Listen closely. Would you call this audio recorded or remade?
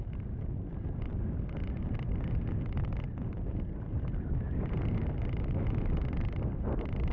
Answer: recorded